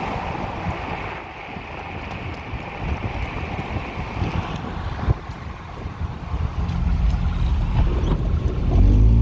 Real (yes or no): yes